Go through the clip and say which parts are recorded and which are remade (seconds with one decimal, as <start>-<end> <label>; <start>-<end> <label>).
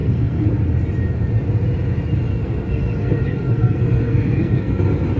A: 0.0-0.6 remade; 0.6-2.3 recorded; 2.3-4.8 remade; 4.8-5.2 recorded